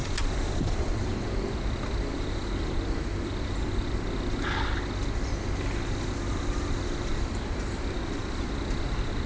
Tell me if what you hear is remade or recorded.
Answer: recorded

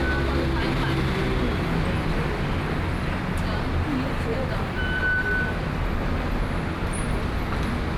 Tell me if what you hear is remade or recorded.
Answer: recorded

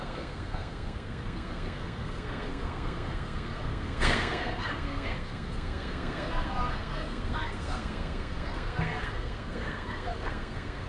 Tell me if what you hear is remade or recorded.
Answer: remade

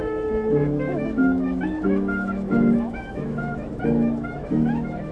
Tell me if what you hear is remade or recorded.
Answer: remade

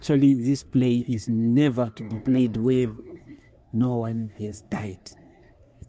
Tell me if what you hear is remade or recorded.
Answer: remade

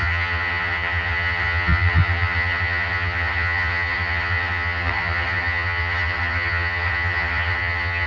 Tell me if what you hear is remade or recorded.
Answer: remade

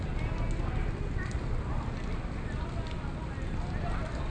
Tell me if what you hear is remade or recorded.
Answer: recorded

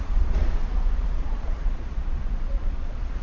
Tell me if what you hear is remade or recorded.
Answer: remade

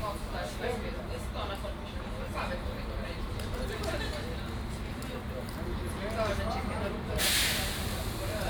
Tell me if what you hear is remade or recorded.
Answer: recorded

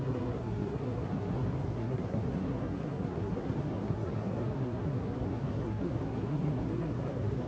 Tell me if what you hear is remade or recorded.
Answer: remade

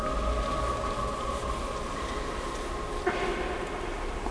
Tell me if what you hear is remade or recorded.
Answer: recorded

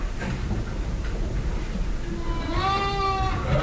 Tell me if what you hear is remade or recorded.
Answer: recorded